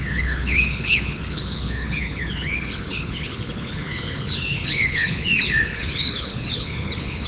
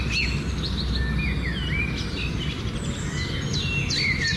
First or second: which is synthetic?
first